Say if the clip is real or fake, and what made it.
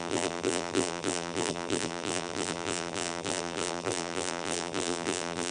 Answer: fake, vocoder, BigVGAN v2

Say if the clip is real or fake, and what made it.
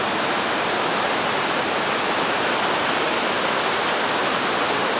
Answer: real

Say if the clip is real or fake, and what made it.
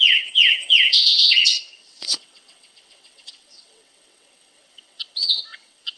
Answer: fake, vocoder, WaveNeXt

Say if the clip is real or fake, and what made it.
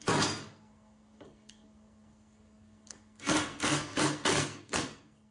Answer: fake, codec, SNAC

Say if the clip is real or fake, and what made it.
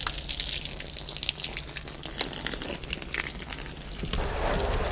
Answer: real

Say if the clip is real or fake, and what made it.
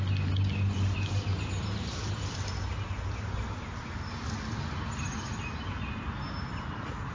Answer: real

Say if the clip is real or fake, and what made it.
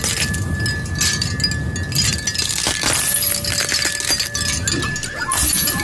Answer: real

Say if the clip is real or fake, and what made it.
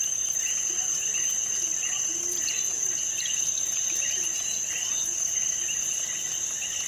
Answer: real